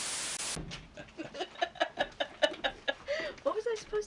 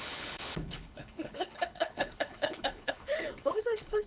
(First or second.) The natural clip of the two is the first